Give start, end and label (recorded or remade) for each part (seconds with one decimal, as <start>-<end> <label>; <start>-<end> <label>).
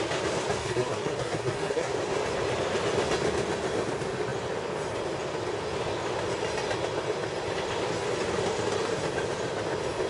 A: 0.0-0.6 recorded; 0.6-1.9 remade; 1.9-10.1 recorded